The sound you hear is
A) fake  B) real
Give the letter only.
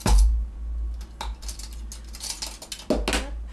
B